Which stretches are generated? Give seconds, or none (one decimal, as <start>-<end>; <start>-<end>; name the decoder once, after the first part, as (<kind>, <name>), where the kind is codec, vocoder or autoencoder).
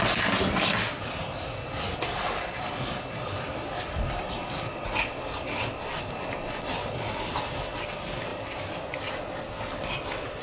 1.0-4.4 (vocoder, BigVGAN v2); 8.3-9.2